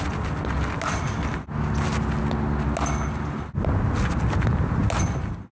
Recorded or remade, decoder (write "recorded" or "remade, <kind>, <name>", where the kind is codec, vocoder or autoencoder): recorded